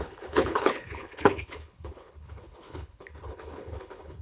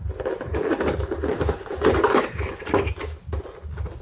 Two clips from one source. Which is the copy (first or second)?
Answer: first